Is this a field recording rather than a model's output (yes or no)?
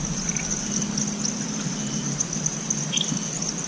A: yes